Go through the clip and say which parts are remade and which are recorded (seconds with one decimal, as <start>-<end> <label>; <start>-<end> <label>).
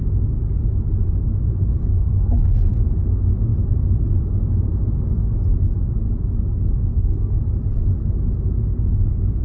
0.0-1.8 recorded; 1.8-2.8 remade; 2.8-6.9 recorded; 6.9-7.4 remade; 7.4-9.4 recorded